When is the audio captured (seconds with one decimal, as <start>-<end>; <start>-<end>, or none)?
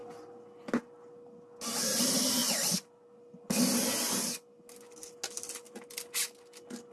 0.0-6.9